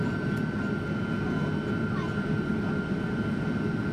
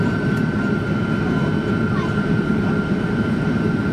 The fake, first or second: second